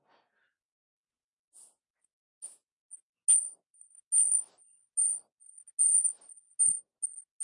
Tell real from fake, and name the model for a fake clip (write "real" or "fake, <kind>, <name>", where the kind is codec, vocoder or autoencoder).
real